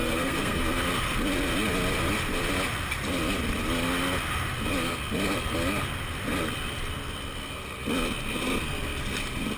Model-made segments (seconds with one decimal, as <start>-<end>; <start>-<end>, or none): 0.0-0.6